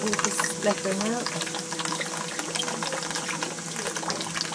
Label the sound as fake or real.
real